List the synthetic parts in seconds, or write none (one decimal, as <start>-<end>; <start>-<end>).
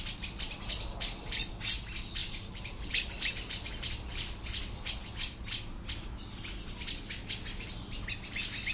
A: 0.9-1.5; 2.2-5.0